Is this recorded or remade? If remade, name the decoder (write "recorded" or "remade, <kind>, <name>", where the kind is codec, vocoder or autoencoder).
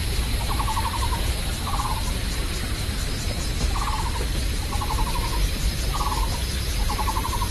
remade, vocoder, BigVGAN v2